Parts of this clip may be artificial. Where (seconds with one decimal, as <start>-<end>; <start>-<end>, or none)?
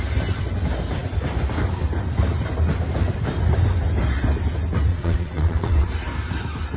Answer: 4.9-5.9